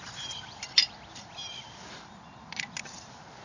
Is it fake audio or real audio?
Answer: real